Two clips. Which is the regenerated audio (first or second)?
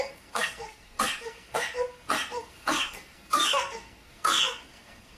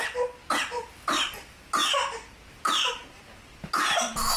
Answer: first